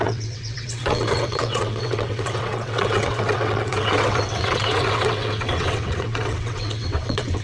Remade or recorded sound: remade